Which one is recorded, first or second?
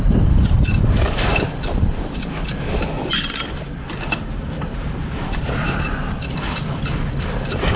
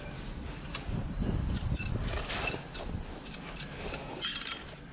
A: second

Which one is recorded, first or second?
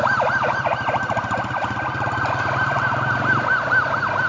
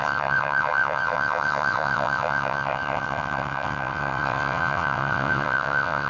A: first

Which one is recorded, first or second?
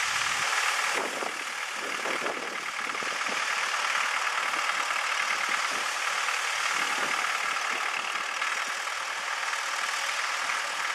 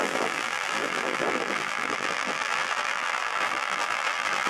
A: first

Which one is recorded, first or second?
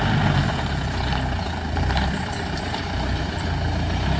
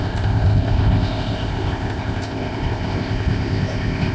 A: first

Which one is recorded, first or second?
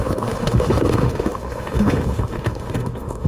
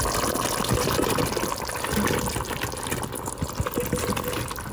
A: second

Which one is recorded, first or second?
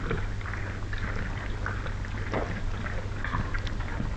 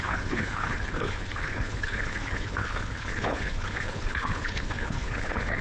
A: first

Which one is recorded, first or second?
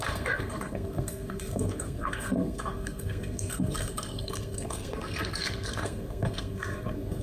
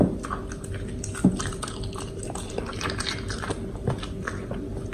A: second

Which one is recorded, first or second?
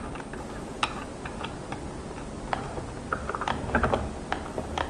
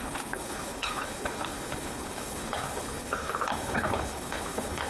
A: first